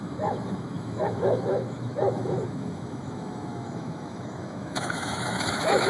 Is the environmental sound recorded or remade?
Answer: remade